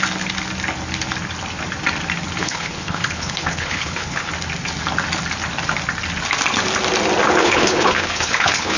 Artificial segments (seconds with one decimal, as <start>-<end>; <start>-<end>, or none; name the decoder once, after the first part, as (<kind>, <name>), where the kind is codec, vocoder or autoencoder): 2.4-4.3 (codec, HILCodec); 7.4-8.8